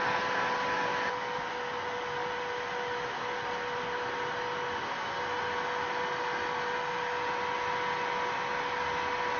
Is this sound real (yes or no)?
yes